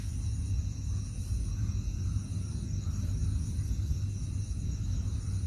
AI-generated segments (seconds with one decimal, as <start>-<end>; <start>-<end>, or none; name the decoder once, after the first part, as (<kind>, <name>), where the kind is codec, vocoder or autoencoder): 0.0-2.3 (vocoder, Vocos); 4.8-5.5